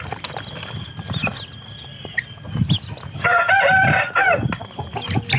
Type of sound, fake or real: real